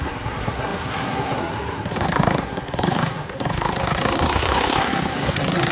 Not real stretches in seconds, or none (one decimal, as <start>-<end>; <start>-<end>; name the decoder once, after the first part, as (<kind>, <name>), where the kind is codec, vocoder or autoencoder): 0.0-5.7 (codec, SNAC)